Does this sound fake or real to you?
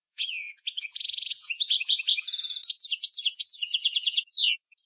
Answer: fake